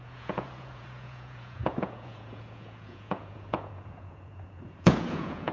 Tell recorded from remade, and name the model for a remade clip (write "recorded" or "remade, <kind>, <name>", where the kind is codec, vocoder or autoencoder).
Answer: remade, vocoder, Vocos